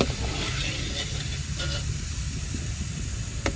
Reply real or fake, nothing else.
real